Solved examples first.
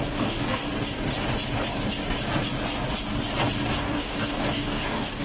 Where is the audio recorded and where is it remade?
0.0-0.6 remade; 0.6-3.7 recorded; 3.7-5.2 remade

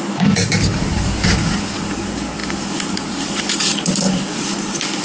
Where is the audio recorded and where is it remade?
0.0-5.0 remade

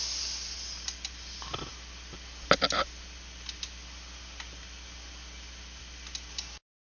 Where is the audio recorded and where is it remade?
0.0-6.9 recorded